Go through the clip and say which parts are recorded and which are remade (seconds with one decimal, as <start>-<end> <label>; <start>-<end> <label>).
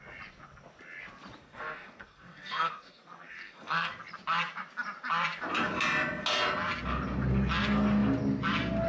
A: 0.0-1.4 recorded; 1.4-3.9 remade; 3.9-8.9 recorded